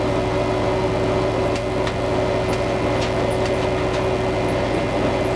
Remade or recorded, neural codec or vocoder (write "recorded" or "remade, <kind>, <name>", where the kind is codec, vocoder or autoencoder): recorded